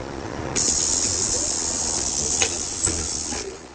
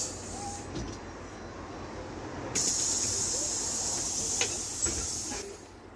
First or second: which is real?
second